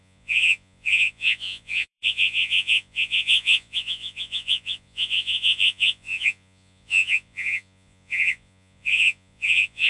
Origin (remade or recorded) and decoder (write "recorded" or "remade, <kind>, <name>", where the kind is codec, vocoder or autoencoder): remade, vocoder, Vocos